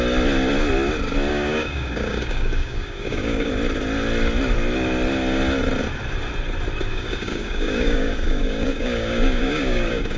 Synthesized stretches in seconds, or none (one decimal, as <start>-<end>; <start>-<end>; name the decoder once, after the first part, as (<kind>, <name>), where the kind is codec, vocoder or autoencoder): 1.3-3.5 (codec, DAC); 6.9-10.2